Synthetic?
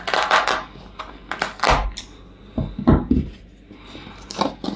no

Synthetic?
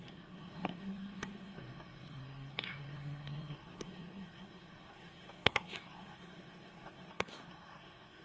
yes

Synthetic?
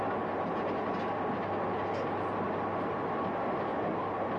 no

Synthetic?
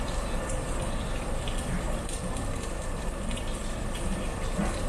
no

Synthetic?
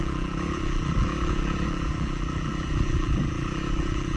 yes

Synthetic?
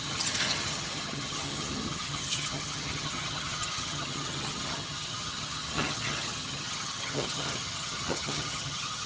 yes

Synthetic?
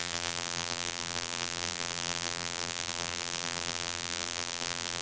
yes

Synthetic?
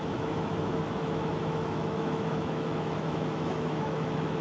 yes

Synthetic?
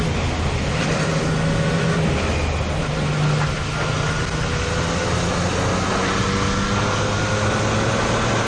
no